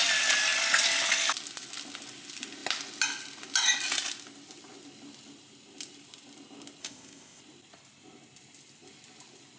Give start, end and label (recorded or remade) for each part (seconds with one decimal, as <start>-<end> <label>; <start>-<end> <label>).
0.0-6.8 recorded; 6.8-7.4 remade; 7.4-9.6 recorded

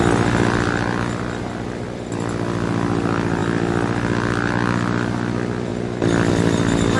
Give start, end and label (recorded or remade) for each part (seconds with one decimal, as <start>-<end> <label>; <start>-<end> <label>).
0.0-7.0 recorded

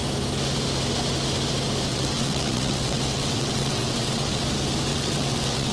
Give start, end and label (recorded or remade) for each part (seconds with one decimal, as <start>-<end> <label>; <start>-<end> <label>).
0.0-1.9 recorded; 1.9-4.4 remade; 4.4-4.9 recorded; 4.9-5.7 remade

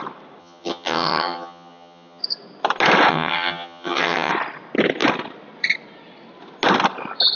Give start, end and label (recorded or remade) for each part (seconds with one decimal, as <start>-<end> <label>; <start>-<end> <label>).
0.0-0.4 recorded; 0.4-2.2 remade; 2.2-3.1 recorded; 3.1-4.3 remade; 4.3-7.4 recorded

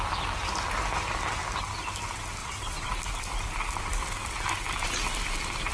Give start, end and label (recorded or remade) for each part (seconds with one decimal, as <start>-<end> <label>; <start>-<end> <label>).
0.0-2.4 recorded; 2.4-2.9 remade; 2.9-5.7 recorded